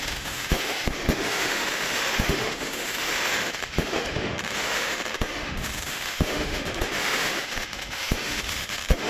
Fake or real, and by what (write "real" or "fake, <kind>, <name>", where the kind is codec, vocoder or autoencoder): fake, autoencoder, DAC-VAE